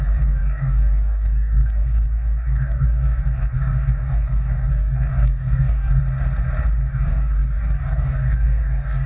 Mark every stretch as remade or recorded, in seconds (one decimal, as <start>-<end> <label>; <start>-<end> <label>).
0.0-6.0 remade; 6.0-6.9 recorded; 6.9-9.1 remade